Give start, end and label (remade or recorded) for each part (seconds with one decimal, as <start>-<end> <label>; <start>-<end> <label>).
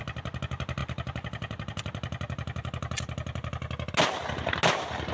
0.0-5.1 recorded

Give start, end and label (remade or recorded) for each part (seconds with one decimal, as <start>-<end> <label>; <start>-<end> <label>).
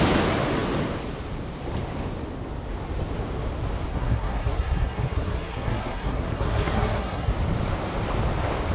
0.0-3.9 recorded; 3.9-7.3 remade; 7.3-8.7 recorded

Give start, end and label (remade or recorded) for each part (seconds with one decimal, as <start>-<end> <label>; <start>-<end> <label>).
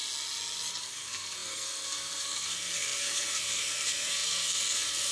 0.0-0.8 recorded; 0.8-5.1 remade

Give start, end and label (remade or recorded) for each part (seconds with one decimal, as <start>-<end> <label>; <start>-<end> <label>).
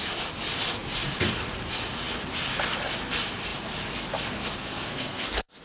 0.0-4.6 recorded; 4.6-5.6 remade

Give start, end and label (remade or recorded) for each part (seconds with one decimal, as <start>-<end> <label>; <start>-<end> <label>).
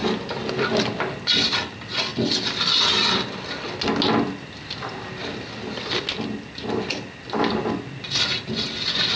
0.0-9.2 recorded